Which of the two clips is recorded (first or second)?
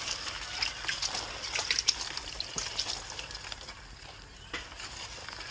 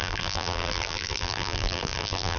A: first